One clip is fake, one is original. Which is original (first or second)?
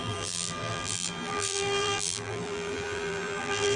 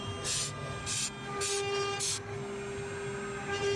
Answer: second